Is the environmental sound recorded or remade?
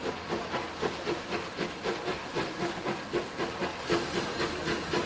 recorded